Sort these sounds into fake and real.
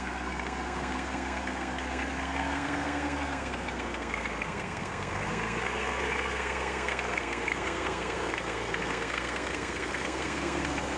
fake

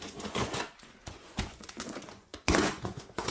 fake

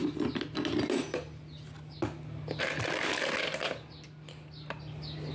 real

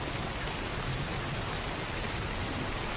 real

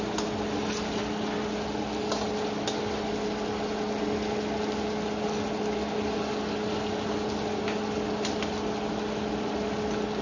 real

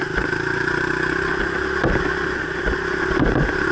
real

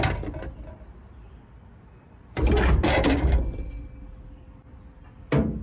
real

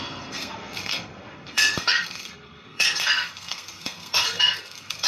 fake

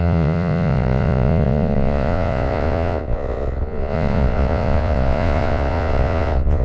fake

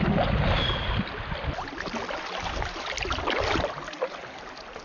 real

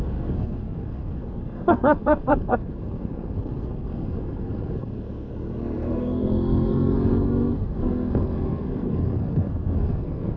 fake